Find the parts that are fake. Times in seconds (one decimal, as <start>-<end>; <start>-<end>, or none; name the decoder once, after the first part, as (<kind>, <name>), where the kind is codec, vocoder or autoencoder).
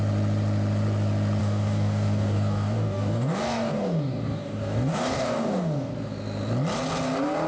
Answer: 1.4-5.9 (codec, DAC)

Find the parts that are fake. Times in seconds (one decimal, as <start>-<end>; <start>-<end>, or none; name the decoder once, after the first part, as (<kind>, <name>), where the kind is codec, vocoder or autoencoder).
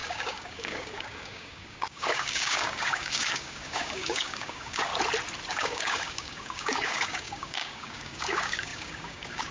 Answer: 0.0-4.9 (codec, DAC); 5.5-9.5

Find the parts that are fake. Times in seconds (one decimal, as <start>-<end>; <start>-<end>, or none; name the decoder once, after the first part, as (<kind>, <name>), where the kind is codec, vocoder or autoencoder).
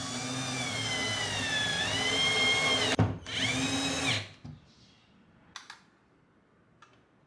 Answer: none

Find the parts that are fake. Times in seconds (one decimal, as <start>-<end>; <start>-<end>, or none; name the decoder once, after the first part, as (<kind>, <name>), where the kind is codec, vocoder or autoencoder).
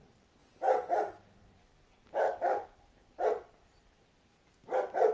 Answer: 1.6-2.8 (codec, DAC)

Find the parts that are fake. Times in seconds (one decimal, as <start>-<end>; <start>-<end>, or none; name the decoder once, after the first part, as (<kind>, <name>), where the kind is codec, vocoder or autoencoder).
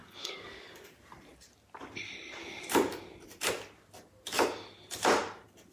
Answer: 0.0-0.9 (codec, DAC)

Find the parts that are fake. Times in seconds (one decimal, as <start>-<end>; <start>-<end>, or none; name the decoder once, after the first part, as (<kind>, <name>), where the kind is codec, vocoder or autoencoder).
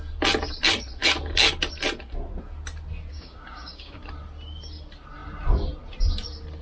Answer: 3.1-4.0 (codec, DAC)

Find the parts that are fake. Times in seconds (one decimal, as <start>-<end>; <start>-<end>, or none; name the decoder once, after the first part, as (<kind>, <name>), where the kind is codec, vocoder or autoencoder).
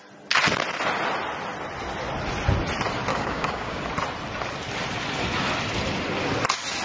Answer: 3.1-3.8 (codec, DAC)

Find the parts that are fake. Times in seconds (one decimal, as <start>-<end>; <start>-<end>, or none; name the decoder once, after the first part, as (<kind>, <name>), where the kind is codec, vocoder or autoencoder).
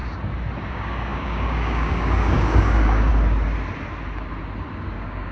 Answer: 0.7-3.1 (codec, DAC); 4.7-5.3